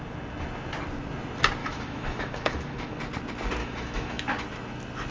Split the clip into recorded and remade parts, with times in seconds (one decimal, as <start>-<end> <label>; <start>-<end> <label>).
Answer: 0.0-1.6 recorded; 1.6-3.0 remade; 3.0-3.6 recorded; 3.6-4.2 remade; 4.2-5.1 recorded